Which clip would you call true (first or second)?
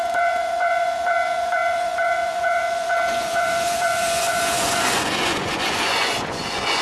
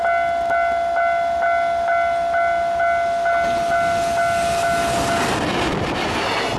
second